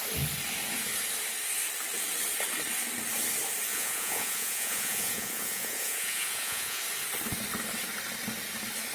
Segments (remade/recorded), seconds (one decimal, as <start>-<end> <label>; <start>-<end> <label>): 0.0-3.7 recorded; 3.7-6.8 remade; 6.8-8.9 recorded